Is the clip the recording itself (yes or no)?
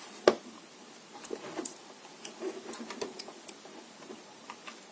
yes